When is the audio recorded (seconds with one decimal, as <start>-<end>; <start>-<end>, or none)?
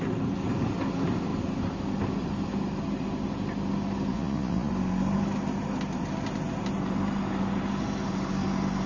0.0-4.1; 4.7-8.9